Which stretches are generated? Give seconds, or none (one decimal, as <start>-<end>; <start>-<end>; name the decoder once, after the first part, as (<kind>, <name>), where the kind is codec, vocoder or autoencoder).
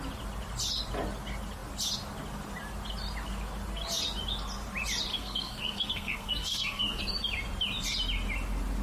5.1-7.0 (codec, SNAC)